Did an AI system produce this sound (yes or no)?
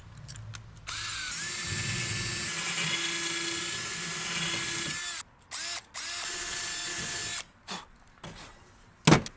no